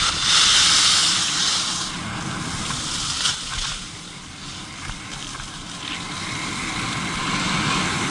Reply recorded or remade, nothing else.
recorded